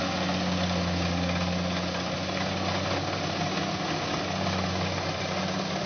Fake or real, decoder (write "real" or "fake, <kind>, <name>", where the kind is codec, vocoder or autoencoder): real